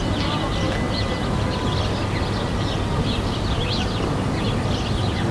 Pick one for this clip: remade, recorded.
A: recorded